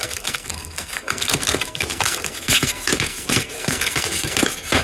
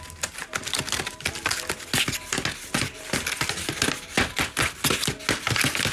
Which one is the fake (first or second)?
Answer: first